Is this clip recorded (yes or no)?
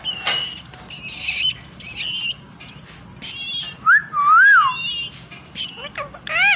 yes